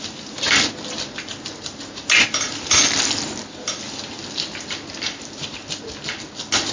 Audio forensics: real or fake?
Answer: real